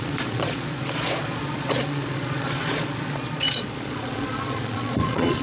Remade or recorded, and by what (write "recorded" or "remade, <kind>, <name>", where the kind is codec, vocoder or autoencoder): remade, vocoder, Vocos